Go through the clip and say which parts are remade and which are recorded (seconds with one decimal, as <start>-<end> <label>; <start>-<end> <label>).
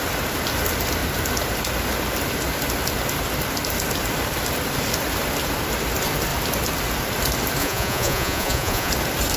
0.0-7.6 recorded; 7.6-8.9 remade; 8.9-9.4 recorded